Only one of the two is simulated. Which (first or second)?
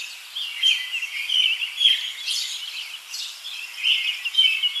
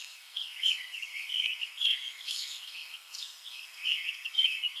second